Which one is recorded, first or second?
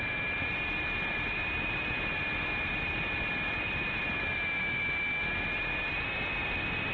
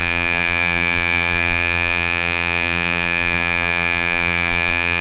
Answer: first